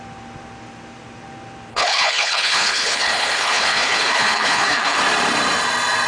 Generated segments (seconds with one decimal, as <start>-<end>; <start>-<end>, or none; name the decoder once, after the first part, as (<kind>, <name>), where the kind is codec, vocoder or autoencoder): 1.7-5.0 (codec, HILCodec)